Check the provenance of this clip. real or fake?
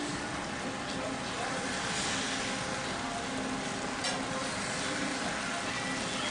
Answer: real